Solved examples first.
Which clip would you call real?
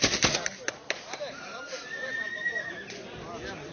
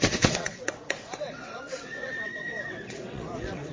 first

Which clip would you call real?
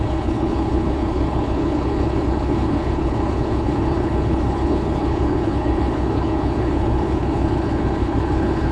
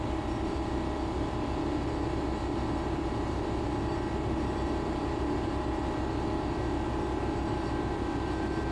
second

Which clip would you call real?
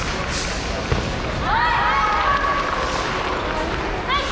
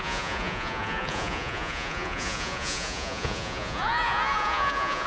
first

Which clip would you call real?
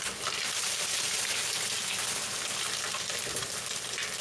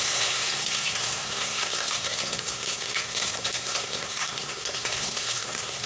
first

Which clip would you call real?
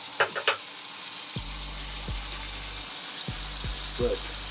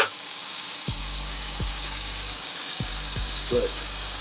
first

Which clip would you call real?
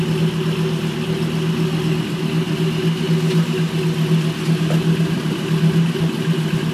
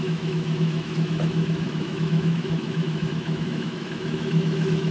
first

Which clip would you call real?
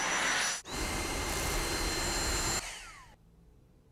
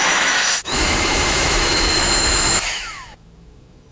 first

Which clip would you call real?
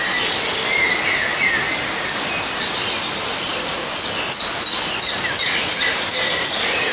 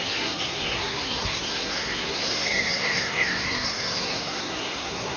first